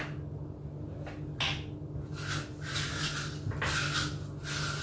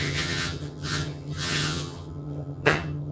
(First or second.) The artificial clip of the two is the second